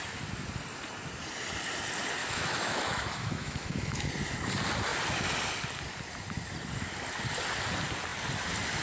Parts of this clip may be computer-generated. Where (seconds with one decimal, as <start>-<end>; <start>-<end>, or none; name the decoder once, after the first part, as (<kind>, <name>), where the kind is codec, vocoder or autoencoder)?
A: 2.2-4.1 (autoencoder, DAC-VAE)